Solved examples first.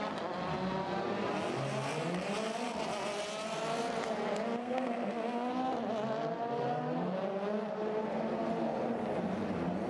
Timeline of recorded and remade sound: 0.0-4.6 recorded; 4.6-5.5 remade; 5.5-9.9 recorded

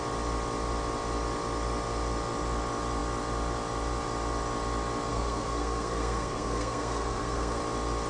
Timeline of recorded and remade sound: 0.0-5.1 recorded; 5.1-7.6 remade; 7.6-8.1 recorded

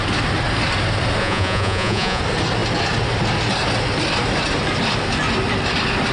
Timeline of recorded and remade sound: 0.0-1.2 recorded; 1.2-2.2 remade; 2.2-6.1 recorded

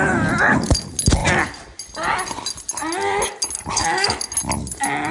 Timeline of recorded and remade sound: 0.0-3.7 recorded; 3.7-4.2 remade; 4.2-5.1 recorded

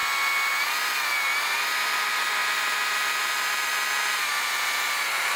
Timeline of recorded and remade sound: 0.0-5.4 recorded